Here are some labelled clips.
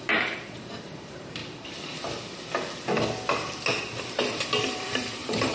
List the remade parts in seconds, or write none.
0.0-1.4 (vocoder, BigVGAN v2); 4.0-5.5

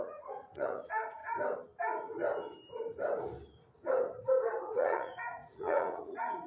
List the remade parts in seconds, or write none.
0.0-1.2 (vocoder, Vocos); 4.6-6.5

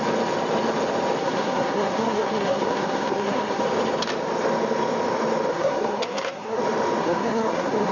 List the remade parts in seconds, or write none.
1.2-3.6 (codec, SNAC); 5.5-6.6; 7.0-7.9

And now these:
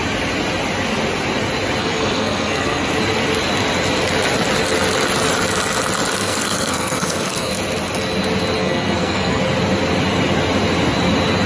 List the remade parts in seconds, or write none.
1.8-2.9 (codec, SNAC); 6.2-7.5; 8.6-9.4

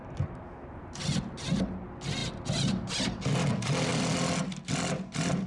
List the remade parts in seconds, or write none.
none

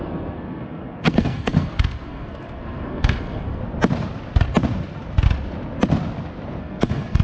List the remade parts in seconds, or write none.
0.0-3.6 (codec, SNAC); 6.6-7.2

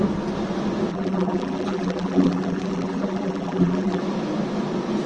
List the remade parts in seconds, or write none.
0.9-4.0 (vocoder, BigVGAN v2)